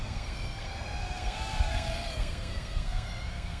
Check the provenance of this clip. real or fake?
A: fake